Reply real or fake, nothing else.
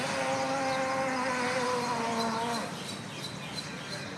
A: real